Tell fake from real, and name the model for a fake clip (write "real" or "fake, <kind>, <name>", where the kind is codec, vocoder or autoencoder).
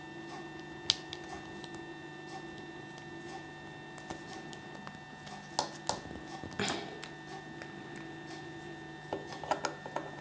real